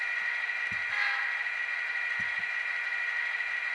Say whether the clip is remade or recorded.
recorded